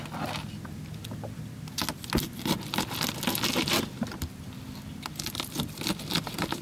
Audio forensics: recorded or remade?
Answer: recorded